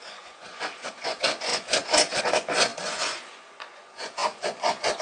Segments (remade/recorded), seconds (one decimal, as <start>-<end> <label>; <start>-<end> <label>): 0.0-5.0 remade